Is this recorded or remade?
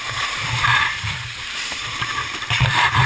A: remade